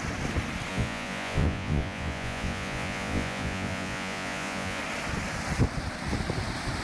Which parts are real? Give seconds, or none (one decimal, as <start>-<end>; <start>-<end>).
0.0-0.7; 4.8-6.8